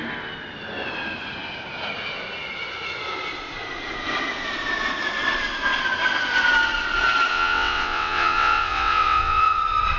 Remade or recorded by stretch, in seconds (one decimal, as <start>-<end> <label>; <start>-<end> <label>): 0.0-7.3 recorded; 7.3-9.6 remade; 9.6-10.0 recorded